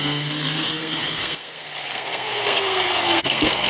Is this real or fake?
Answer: fake